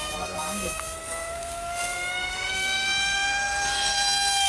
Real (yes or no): no